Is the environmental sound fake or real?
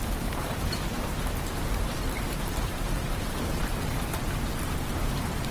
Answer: fake